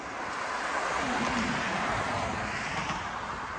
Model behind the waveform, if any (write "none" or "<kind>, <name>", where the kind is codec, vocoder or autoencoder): none